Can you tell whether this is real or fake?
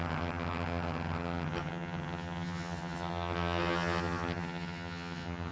fake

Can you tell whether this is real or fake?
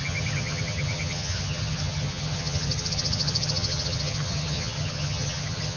fake